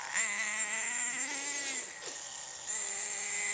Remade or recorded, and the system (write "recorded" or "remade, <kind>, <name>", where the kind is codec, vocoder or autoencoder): recorded